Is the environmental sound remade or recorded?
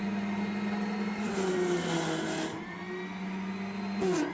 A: recorded